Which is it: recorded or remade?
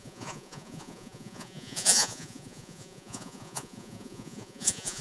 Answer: remade